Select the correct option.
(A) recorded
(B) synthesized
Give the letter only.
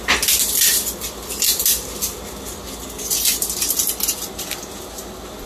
A